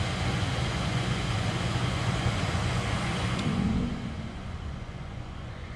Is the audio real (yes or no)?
no